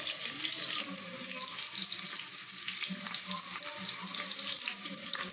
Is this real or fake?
real